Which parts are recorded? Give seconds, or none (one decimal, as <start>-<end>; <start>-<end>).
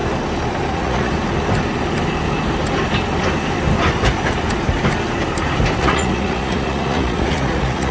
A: 0.0-0.7; 1.1-5.8